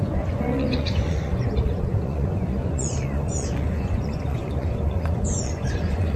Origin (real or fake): fake